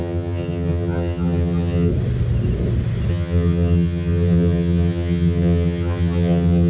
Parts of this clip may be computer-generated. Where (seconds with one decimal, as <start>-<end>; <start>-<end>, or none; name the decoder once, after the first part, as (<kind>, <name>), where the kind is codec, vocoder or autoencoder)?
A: 0.0-1.9 (vocoder, HiFi-GAN); 3.1-6.7